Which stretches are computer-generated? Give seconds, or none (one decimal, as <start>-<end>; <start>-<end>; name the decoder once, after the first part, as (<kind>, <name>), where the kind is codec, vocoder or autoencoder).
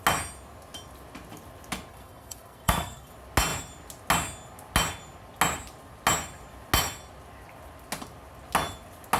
1.9-3.1 (codec, SNAC)